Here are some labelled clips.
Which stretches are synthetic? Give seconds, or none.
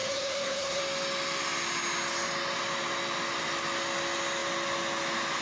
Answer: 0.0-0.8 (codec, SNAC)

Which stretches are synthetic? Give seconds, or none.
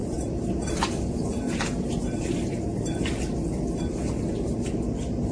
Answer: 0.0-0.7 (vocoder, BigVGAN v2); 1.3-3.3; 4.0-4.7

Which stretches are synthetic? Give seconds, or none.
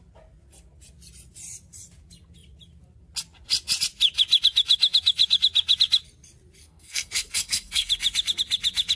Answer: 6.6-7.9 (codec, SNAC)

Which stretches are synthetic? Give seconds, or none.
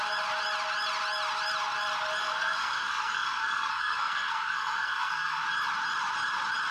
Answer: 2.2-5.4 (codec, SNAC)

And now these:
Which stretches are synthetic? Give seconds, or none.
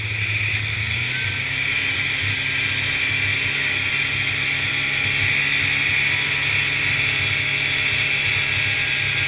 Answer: none